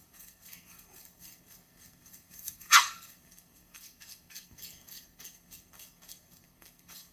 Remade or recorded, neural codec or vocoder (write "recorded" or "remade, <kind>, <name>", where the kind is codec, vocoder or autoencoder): remade, codec, SNAC